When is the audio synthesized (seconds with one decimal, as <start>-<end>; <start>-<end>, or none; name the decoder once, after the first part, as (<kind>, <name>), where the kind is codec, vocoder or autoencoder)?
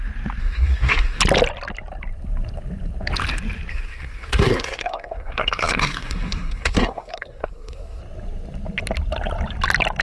0.4-1.2 (codec, SNAC); 3.7-8.0